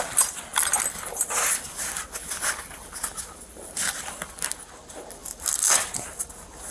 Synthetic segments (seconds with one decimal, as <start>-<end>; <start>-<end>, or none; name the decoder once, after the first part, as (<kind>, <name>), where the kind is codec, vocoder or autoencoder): 5.2-6.3 (vocoder, BigVGAN v2)